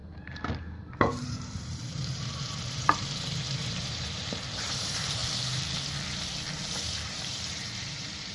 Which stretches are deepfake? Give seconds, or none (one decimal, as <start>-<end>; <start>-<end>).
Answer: 0.8-5.2; 6.7-8.3